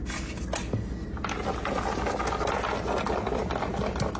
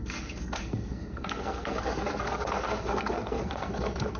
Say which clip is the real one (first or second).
first